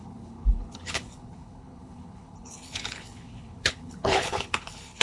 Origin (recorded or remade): remade